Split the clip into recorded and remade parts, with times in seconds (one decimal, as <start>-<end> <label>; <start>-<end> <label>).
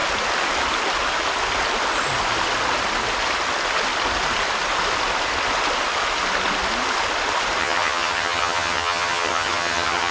0.0-7.6 recorded; 7.6-10.1 remade